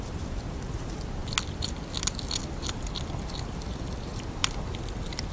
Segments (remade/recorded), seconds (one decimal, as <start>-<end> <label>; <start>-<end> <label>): 0.0-1.2 remade; 1.2-3.4 recorded; 3.4-4.4 remade; 4.4-5.3 recorded